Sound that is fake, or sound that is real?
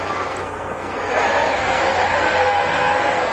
fake